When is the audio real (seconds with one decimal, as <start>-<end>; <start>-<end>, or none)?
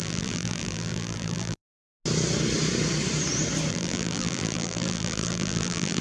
1.6-3.7